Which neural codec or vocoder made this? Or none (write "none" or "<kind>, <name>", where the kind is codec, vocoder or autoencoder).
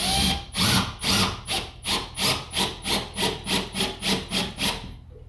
none